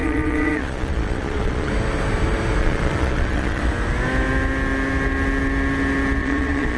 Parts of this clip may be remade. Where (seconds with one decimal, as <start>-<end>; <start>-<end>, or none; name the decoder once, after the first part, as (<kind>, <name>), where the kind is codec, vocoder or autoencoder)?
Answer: 0.0-1.7 (vocoder, Vocos); 2.6-3.6; 6.2-6.8